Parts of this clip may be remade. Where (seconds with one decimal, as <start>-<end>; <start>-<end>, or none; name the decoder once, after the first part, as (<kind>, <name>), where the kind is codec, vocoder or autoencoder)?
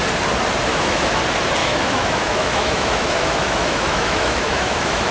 0.7-1.2 (autoencoder, DAC-VAE); 1.6-5.1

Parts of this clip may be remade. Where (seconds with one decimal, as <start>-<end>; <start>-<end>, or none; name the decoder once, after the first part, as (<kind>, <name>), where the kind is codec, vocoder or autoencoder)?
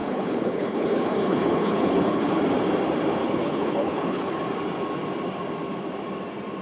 0.0-2.4 (codec, HILCodec); 3.2-4.3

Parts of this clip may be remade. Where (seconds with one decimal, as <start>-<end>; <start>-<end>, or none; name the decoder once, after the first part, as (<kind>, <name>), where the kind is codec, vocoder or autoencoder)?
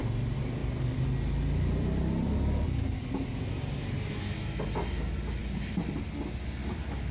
none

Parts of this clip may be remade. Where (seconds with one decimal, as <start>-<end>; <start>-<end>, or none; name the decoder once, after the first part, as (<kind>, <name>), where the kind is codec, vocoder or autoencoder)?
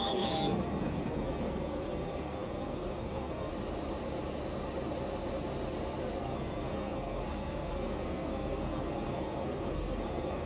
0.0-3.5 (codec, SNAC); 6.2-10.5